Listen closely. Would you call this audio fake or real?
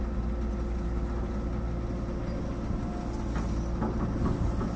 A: real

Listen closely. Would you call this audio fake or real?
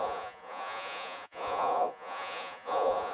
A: fake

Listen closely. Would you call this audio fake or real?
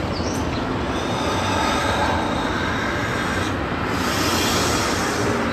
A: real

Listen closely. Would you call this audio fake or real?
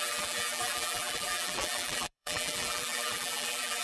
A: fake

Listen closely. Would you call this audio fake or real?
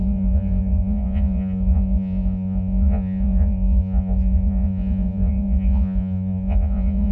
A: fake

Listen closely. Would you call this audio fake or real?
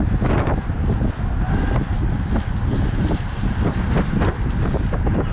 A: real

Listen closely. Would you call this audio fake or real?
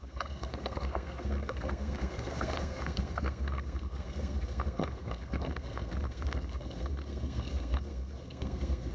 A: fake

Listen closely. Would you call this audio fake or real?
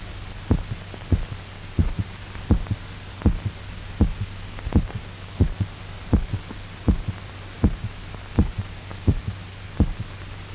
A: real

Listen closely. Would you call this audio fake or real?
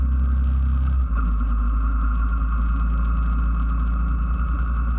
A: real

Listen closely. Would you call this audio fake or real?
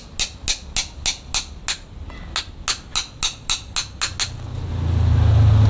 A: real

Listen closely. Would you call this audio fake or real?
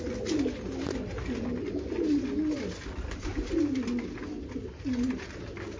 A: real